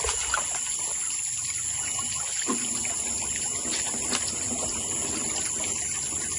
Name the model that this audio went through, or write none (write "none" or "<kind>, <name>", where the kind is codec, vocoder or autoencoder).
vocoder, BigVGAN v2